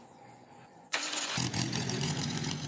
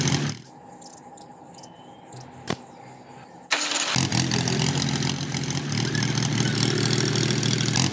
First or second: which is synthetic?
first